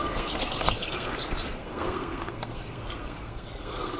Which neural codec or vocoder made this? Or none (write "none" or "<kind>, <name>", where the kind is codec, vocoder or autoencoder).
codec, SNAC